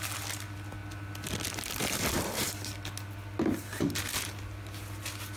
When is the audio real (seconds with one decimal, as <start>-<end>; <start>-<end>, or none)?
0.0-5.4